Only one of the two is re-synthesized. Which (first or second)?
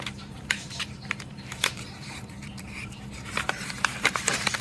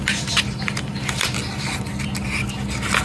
first